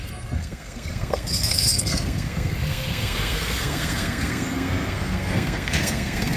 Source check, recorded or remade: remade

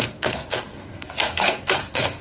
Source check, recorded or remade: remade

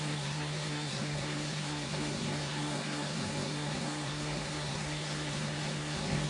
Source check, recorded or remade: remade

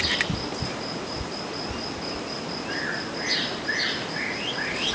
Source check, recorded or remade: recorded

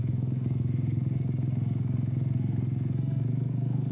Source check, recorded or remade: remade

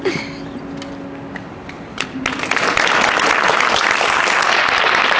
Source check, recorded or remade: recorded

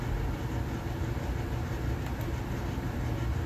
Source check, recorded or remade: recorded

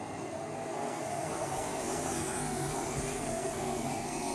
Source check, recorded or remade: remade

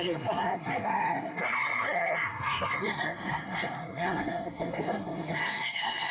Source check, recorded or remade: remade